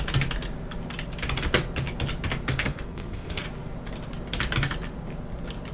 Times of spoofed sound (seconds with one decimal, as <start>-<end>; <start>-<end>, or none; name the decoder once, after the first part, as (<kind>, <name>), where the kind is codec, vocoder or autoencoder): 2.5-3.4 (codec, SNAC)